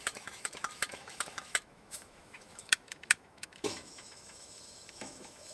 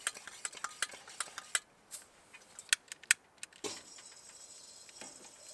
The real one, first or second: second